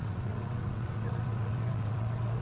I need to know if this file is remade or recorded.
remade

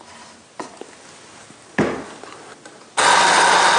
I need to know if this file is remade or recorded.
recorded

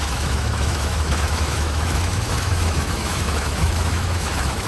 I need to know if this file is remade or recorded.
remade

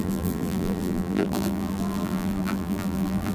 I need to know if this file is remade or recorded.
remade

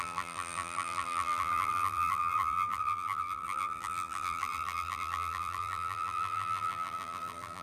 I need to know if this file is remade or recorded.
remade